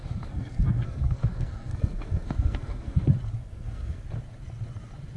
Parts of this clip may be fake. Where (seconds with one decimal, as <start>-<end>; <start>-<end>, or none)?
0.0-3.1; 3.5-4.0